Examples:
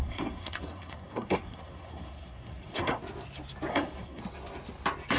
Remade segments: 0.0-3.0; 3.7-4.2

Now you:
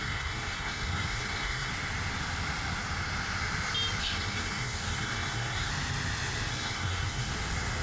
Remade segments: 0.0-1.7; 4.0-5.7; 6.5-7.3

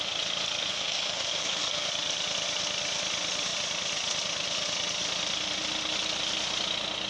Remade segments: 0.7-1.9